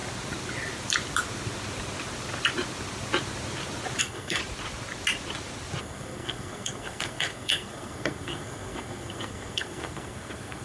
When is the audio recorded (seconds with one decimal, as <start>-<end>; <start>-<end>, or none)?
0.0-4.0; 4.4-5.8